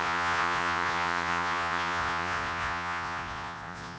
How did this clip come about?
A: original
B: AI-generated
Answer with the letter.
B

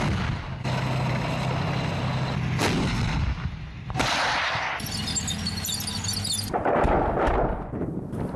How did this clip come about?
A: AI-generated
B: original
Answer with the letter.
B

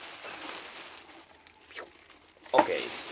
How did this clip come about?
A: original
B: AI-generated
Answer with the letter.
A